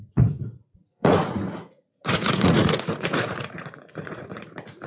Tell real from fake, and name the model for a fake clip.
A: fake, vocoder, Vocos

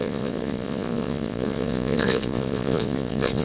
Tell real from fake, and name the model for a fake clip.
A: fake, vocoder, Vocos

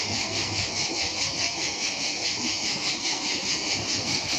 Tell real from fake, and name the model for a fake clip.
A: fake, codec, SNAC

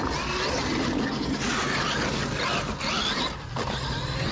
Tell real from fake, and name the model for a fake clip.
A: real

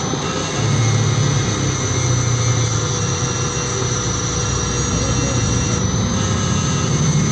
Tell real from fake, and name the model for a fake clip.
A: real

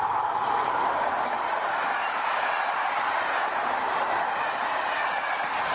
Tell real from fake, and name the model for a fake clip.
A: real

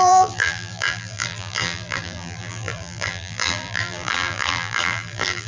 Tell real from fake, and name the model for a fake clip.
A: fake, vocoder, BigVGAN v2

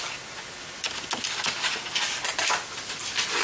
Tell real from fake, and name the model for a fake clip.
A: real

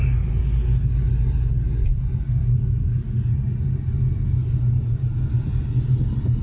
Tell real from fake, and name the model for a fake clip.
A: real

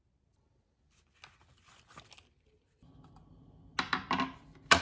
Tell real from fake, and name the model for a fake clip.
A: real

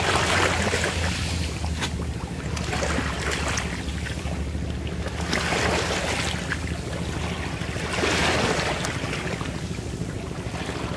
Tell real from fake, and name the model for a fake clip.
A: real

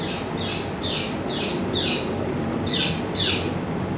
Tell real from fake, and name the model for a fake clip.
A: real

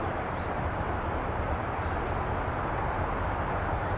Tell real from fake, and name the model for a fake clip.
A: fake, vocoder, BigVGAN v2